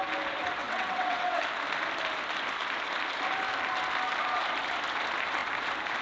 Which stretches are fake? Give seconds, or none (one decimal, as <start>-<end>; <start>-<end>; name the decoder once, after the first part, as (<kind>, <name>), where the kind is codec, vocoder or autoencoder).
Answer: 0.6-1.4 (vocoder, WaveNeXt)